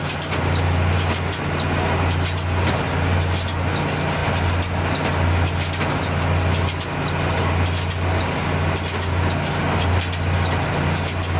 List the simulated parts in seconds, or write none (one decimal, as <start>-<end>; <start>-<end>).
none